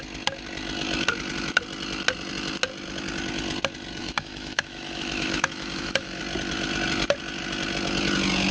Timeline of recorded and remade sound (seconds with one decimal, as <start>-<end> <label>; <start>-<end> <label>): 0.0-4.0 recorded; 4.0-6.2 remade; 6.2-8.5 recorded